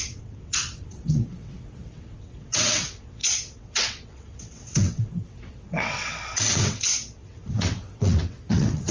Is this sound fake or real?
fake